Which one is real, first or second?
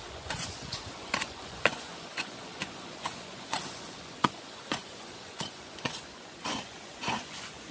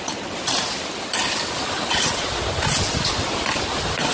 second